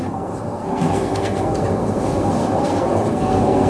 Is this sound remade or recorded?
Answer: remade